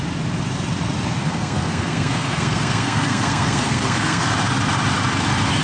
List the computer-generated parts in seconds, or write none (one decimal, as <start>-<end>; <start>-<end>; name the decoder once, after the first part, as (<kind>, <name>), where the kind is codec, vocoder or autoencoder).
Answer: 1.2-4.2 (codec, SNAC)